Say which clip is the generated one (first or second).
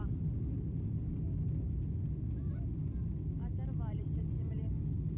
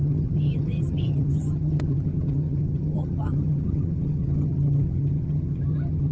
second